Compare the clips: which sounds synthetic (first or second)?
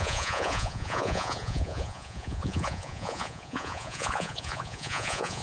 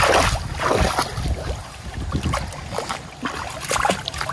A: first